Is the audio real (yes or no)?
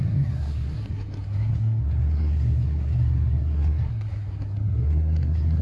no